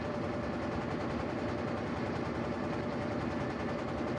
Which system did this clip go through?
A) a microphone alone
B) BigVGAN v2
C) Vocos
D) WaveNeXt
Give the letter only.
A